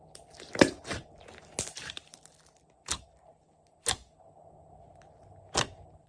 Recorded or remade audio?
recorded